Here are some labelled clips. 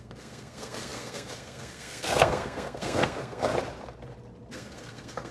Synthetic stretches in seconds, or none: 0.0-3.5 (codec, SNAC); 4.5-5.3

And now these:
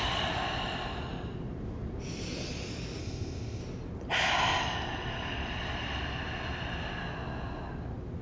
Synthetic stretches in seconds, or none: 3.0-3.6 (codec, ZipCodec)

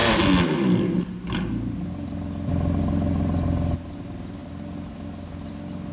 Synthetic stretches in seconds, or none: none